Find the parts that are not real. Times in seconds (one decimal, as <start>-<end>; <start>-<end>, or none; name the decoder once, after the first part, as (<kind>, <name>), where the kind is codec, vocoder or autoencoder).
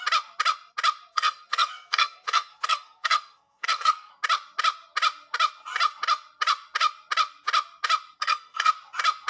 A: 1.1-4.1 (codec, SNAC); 8.2-8.7